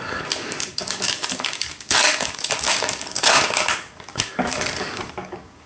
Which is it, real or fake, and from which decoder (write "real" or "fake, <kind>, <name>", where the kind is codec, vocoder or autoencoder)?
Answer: fake, codec, DAC